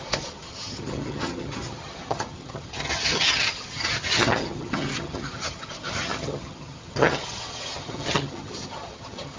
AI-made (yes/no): yes